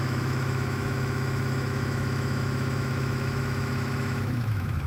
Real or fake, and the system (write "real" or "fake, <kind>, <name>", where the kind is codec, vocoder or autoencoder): fake, autoencoder, DAC-VAE